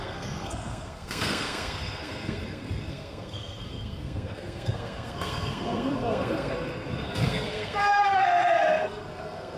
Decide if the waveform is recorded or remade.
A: remade